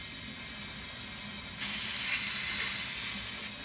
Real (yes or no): yes